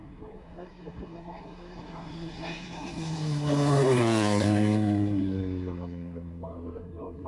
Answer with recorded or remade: remade